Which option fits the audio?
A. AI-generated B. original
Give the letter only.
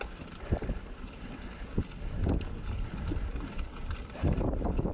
B